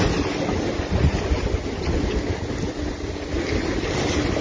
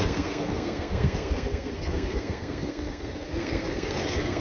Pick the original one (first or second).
first